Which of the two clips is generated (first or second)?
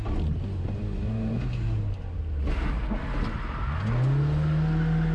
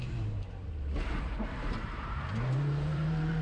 second